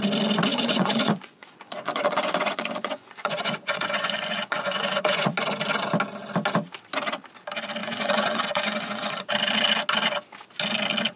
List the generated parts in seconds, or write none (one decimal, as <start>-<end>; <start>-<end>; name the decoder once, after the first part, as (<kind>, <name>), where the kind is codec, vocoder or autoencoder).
0.5-5.3 (vocoder, Vocos); 7.8-9.3